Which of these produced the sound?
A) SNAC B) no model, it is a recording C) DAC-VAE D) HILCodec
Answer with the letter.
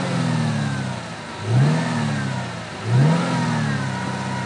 B